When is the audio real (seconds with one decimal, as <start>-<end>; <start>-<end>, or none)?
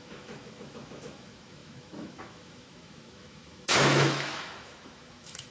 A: none